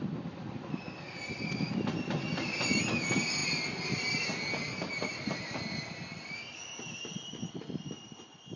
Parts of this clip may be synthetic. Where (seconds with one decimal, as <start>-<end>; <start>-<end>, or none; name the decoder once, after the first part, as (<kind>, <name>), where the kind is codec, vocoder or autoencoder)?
none